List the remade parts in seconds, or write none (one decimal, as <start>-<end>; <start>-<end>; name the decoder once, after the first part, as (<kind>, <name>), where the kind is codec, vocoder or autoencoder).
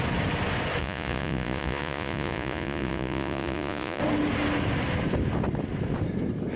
0.8-4.0 (vocoder, Vocos)